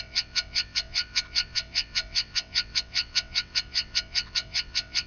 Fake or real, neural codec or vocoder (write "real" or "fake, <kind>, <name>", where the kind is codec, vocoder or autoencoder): fake, vocoder, WaveNeXt